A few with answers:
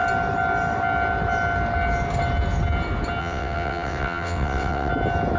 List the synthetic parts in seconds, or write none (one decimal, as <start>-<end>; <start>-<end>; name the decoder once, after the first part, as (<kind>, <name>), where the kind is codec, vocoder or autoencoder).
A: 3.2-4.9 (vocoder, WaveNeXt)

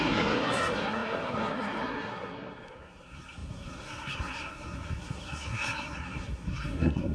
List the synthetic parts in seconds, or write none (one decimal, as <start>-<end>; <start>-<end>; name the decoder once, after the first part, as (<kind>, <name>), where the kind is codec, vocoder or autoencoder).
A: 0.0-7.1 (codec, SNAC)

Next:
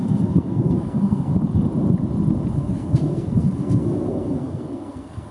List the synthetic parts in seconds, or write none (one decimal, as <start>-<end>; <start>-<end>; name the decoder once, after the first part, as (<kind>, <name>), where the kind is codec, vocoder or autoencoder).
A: 0.0-1.3 (codec, SNAC); 2.5-5.3

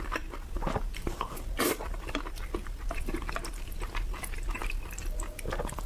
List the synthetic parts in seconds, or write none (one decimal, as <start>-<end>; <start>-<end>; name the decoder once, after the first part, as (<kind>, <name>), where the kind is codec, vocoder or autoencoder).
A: 0.0-4.6 (vocoder, BigVGAN v2); 5.5-5.9

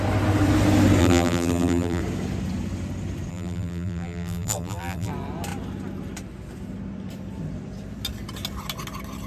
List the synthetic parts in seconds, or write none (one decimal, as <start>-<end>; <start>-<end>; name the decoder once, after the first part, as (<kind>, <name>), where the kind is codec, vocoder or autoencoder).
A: 1.0-2.0 (vocoder, BigVGAN v2); 3.3-5.1

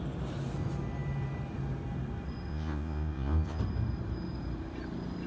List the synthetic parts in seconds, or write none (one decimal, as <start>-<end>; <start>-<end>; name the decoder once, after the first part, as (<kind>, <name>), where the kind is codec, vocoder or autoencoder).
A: 2.5-3.6 (vocoder, Vocos)

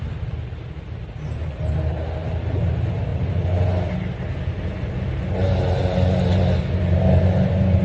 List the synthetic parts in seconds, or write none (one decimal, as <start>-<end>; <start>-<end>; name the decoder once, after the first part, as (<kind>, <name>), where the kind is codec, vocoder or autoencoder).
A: none

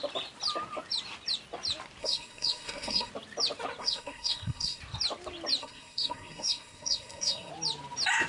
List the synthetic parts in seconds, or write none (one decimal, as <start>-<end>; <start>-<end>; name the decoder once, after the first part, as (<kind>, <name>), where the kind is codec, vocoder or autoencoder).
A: 2.0-3.1 (codec, SNAC); 3.8-4.8; 5.6-7.5